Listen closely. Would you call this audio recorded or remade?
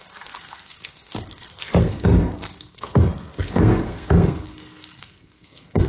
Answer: remade